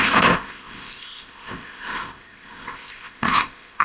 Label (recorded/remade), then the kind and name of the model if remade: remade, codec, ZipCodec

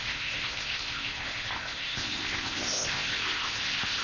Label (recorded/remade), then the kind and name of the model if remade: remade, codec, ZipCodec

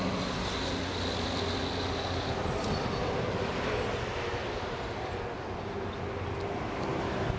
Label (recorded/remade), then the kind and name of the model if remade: recorded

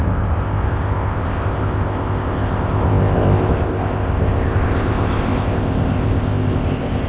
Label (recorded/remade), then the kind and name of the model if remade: remade, codec, ZipCodec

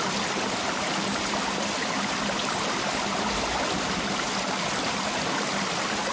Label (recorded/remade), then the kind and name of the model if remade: recorded